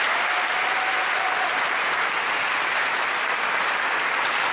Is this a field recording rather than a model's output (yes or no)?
yes